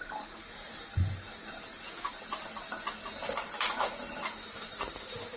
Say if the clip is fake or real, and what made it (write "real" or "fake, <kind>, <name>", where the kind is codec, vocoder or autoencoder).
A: real